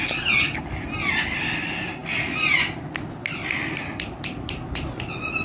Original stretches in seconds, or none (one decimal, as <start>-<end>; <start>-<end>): 0.0-5.4